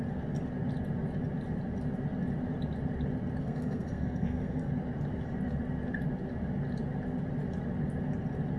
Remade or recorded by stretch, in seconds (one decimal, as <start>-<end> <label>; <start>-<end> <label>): 0.0-3.4 recorded; 3.4-4.7 remade; 4.7-8.6 recorded